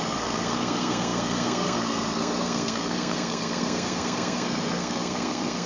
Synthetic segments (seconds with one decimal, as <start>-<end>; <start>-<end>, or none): 0.0-5.7